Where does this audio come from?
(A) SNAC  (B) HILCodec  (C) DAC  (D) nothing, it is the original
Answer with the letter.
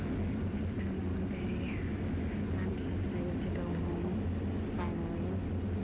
D